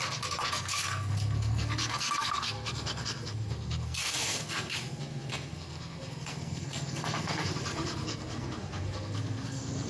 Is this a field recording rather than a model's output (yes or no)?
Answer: no